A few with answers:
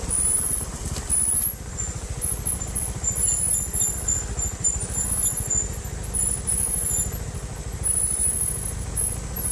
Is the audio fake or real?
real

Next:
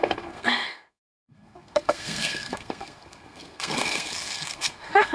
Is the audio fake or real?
fake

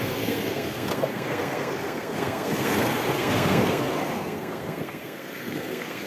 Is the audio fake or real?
fake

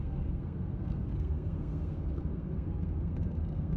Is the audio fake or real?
fake